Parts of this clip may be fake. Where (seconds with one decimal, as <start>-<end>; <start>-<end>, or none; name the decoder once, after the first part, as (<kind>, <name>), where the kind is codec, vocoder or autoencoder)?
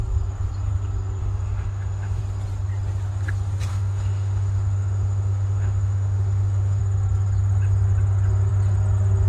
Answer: 1.2-2.2 (autoencoder, DAC-VAE); 3.7-6.8